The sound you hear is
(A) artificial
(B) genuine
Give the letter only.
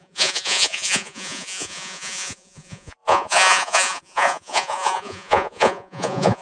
A